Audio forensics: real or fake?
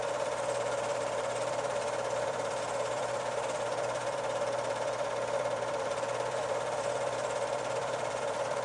fake